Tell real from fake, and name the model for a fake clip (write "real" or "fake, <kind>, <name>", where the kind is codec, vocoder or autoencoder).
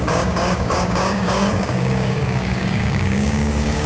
fake, codec, DAC